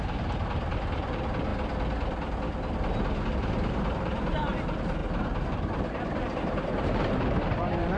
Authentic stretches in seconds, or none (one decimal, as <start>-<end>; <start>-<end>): 1.5-3.3; 5.0-5.5